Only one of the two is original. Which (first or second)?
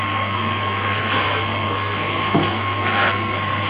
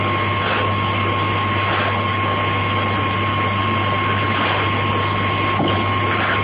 second